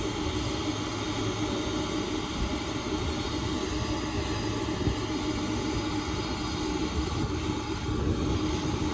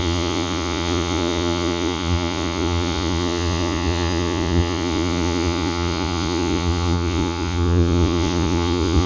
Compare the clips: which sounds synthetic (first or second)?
second